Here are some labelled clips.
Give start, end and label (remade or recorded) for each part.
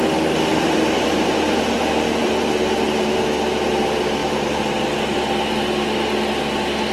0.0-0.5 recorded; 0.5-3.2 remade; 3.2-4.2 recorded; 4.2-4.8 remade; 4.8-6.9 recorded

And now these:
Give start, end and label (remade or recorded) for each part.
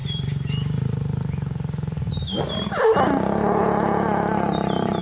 0.0-2.4 remade; 2.4-5.0 recorded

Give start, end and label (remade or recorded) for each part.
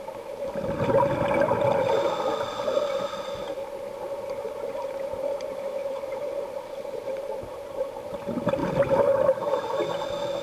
0.0-5.8 recorded; 5.8-8.1 remade; 8.1-8.6 recorded; 8.6-9.1 remade; 9.1-10.4 recorded